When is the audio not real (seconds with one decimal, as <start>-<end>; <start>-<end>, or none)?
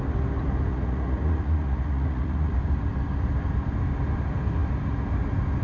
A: 0.7-2.5